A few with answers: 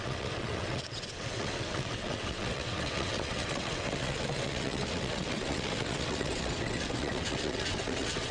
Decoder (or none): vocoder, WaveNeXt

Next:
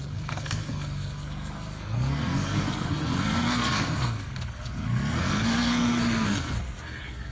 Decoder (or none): codec, SNAC